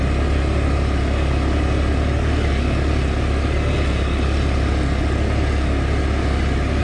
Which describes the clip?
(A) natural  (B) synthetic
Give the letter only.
A